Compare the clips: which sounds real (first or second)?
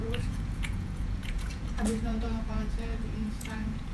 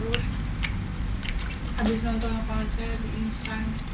second